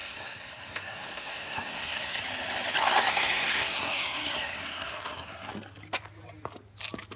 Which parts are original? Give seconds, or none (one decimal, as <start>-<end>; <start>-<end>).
2.2-3.1; 5.5-7.2

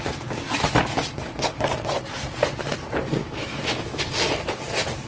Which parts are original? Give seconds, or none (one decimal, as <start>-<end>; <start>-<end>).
0.0-3.2; 4.0-5.1

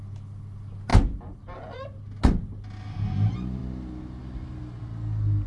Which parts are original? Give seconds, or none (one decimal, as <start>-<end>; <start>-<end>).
0.0-5.5